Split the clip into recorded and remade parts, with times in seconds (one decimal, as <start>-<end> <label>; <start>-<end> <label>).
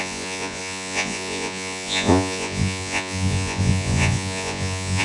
0.0-5.0 remade